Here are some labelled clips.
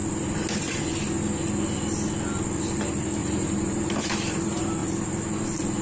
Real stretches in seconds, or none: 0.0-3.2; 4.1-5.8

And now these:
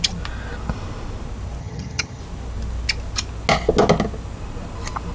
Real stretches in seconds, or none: 0.0-1.6; 2.2-5.1

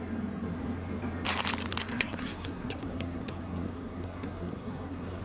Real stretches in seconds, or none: 0.0-1.9

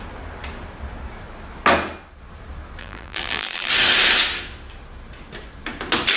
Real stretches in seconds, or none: 0.0-2.8; 3.7-6.2